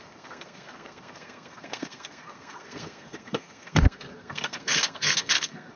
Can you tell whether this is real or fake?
fake